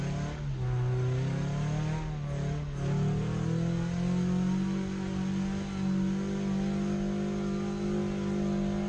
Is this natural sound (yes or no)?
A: yes